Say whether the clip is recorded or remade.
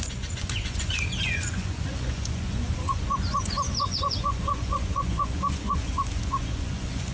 remade